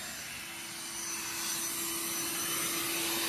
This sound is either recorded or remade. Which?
recorded